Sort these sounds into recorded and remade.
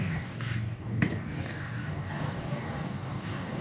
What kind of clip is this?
remade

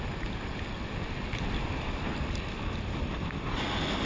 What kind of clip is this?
recorded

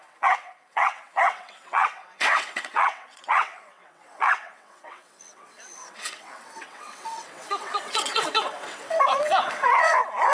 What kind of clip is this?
remade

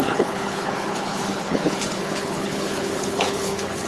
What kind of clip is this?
remade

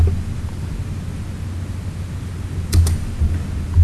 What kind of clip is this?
remade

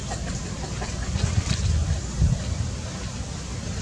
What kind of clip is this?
recorded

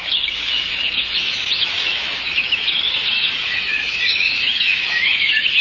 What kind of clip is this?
remade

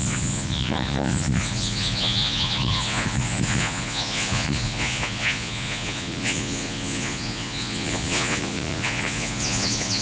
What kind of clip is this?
remade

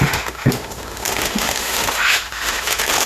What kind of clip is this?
remade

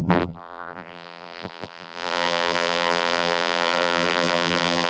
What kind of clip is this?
remade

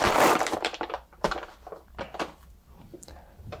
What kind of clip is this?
remade